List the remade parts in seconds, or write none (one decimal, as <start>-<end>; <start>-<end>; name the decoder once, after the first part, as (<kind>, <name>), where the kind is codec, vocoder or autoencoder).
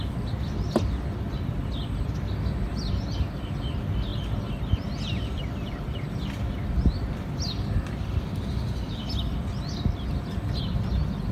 none